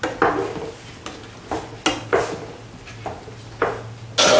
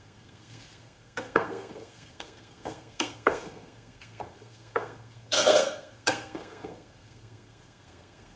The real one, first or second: first